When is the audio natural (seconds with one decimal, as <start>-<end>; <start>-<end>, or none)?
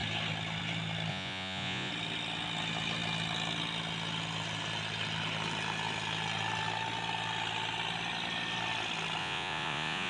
0.0-1.1; 1.9-9.2